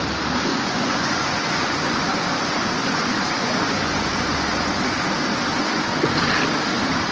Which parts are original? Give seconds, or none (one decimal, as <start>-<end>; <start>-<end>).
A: 0.0-0.5; 4.8-5.5; 6.3-7.1